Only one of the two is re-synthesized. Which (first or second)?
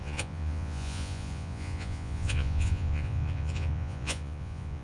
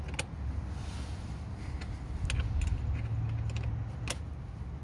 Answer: first